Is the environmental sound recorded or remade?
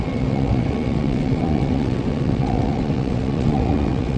remade